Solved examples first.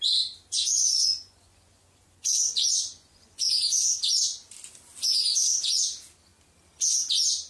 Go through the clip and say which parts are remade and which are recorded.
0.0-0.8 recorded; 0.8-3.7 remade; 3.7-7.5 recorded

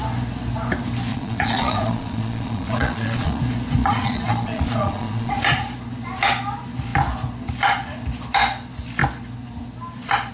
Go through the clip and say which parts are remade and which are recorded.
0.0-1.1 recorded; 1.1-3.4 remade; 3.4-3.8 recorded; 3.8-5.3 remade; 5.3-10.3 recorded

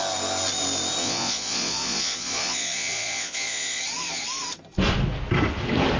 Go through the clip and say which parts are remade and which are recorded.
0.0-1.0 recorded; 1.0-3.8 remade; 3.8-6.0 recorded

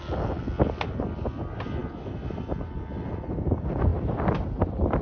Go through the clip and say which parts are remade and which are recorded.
0.0-5.0 recorded

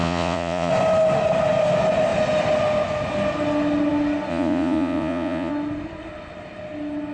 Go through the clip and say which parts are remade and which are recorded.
0.0-0.7 remade; 0.7-4.3 recorded; 4.3-5.5 remade; 5.5-7.1 recorded

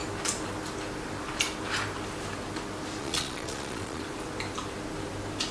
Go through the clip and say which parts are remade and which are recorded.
0.0-3.0 recorded; 3.0-4.0 remade; 4.0-5.5 recorded